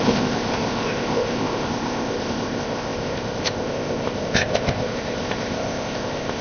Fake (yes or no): yes